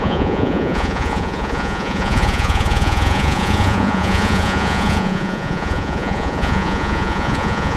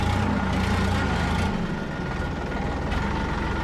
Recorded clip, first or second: second